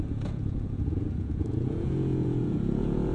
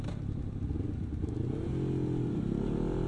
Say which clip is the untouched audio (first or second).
second